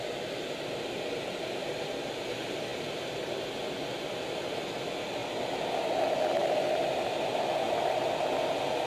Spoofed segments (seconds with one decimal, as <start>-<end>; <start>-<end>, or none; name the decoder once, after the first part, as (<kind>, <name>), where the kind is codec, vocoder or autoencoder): none